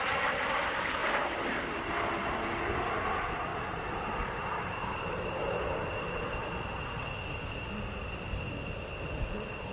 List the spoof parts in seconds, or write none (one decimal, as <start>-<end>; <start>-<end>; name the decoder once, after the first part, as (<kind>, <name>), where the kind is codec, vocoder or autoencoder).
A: 3.5-6.5 (vocoder, BigVGAN v2)